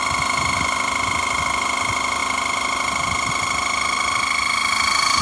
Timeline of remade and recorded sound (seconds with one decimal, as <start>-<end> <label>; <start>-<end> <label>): 0.0-5.2 recorded